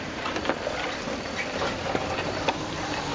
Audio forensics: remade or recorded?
remade